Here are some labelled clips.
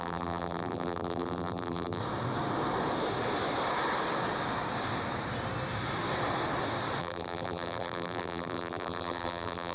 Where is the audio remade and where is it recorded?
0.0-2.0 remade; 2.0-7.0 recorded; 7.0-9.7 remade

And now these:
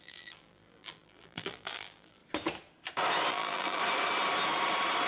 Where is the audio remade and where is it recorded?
0.0-2.2 remade; 2.2-3.3 recorded; 3.3-3.8 remade; 3.8-5.1 recorded

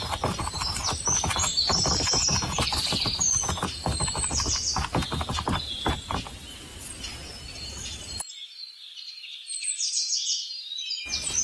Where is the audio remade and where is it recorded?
0.0-11.4 recorded

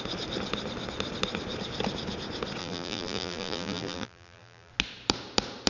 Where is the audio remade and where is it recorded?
0.0-2.6 recorded; 2.6-4.7 remade; 4.7-5.7 recorded

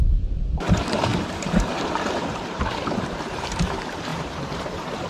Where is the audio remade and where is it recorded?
0.0-1.1 remade; 1.1-1.7 recorded; 1.7-5.1 remade

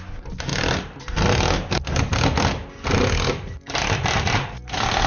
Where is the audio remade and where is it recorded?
0.0-3.8 recorded; 3.8-5.1 remade

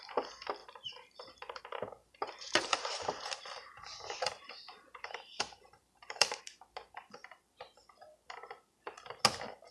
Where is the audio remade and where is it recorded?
0.0-0.6 recorded; 0.6-1.6 remade; 1.6-2.0 recorded; 2.0-6.4 remade; 6.4-9.7 recorded

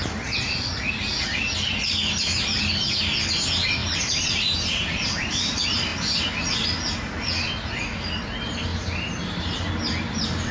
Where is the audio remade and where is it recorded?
0.0-3.8 recorded; 3.8-5.3 remade; 5.3-8.7 recorded; 8.7-9.7 remade; 9.7-10.5 recorded